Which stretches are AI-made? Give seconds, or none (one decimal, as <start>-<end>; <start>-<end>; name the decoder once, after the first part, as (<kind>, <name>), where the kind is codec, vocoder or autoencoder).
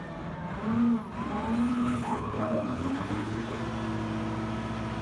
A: 1.7-3.6 (codec, HILCodec)